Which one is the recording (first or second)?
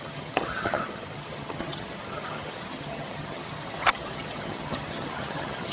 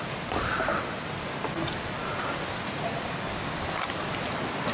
second